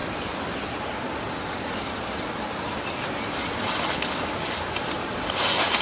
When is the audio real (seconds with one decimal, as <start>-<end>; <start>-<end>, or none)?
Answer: 0.0-5.8